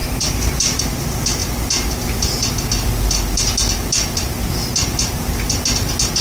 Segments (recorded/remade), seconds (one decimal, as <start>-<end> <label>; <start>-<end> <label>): 0.0-0.8 remade; 0.8-6.2 recorded